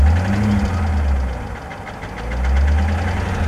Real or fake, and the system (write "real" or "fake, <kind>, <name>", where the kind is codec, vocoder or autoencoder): real